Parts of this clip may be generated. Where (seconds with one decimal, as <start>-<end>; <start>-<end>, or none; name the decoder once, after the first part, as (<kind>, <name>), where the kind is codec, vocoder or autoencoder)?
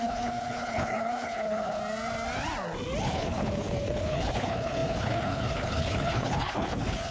0.0-1.8 (codec, HILCodec); 3.0-7.1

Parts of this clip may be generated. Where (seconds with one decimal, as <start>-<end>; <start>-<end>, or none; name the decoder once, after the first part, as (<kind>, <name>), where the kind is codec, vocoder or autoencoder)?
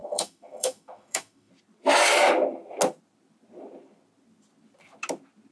0.0-1.5 (autoencoder, DAC-VAE)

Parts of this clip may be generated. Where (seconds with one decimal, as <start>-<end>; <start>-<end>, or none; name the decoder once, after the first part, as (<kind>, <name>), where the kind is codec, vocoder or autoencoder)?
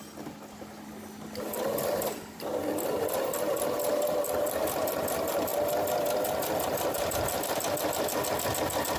none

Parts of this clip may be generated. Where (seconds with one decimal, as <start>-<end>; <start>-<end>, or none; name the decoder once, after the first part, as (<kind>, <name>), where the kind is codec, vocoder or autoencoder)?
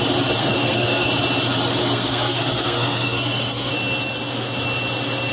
0.4-1.1 (codec, SNAC); 1.8-3.7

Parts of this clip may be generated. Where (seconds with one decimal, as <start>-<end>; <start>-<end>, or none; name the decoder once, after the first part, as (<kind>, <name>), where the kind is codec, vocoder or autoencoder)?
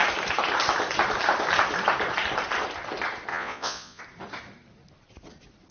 3.3-4.0 (vocoder, Vocos)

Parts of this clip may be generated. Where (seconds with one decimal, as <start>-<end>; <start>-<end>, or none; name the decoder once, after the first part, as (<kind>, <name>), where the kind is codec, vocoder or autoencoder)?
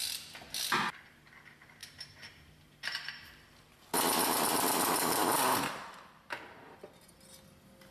1.8-3.1 (vocoder, BigVGAN v2)